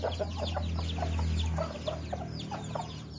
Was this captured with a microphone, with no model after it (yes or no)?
yes